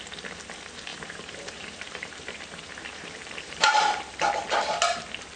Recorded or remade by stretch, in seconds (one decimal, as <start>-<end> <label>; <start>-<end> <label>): 0.0-0.9 recorded; 0.9-4.1 remade; 4.1-5.4 recorded